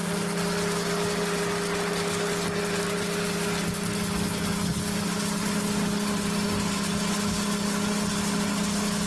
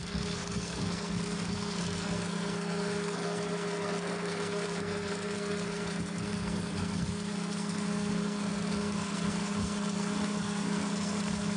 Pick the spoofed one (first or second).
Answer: second